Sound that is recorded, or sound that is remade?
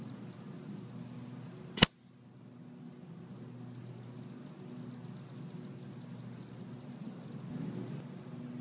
recorded